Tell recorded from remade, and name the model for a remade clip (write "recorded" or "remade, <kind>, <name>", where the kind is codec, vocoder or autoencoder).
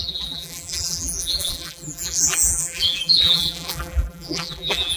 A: remade, vocoder, BigVGAN v2